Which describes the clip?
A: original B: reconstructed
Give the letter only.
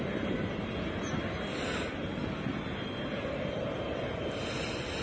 A